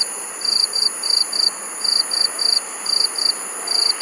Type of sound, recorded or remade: remade